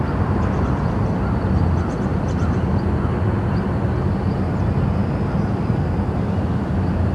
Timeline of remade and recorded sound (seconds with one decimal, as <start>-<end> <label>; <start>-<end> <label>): 0.0-7.1 recorded